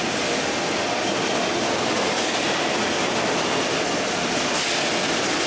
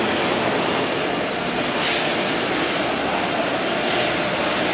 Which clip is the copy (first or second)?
first